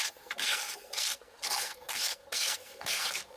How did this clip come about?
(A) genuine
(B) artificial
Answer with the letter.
B